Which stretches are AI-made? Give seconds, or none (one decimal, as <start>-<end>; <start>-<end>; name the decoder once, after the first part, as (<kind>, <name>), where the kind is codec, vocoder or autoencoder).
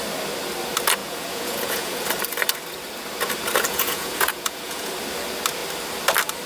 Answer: 1.0-2.0 (vocoder, Vocos); 3.7-4.9